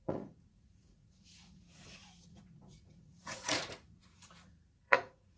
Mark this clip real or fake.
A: fake